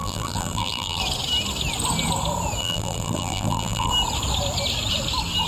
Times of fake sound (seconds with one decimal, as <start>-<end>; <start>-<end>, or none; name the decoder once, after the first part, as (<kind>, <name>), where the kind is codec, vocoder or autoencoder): 0.0-1.0 (vocoder, BigVGAN v2); 2.6-3.9